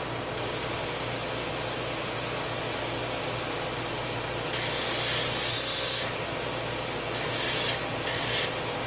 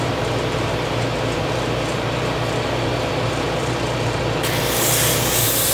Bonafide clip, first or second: first